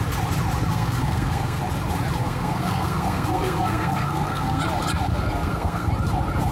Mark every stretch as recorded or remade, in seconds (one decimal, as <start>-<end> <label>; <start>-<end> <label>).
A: 0.0-0.7 recorded; 0.7-1.6 remade; 1.6-2.2 recorded; 2.2-4.6 remade; 4.6-5.1 recorded; 5.1-5.9 remade; 5.9-6.5 recorded